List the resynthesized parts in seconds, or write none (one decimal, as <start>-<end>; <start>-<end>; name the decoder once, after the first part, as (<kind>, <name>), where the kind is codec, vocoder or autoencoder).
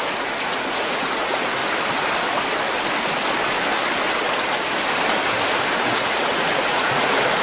0.0-1.6 (vocoder, Vocos); 5.8-7.4